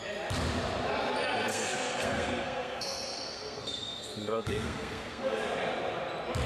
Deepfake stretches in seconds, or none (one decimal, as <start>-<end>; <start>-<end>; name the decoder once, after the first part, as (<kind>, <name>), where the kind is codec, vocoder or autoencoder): 1.5-5.4 (codec, SNAC)